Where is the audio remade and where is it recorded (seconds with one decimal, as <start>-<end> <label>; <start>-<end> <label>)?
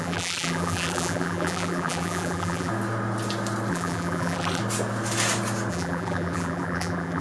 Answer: 0.0-2.7 remade; 2.7-3.7 recorded; 3.7-4.6 remade; 4.6-5.7 recorded; 5.7-7.2 remade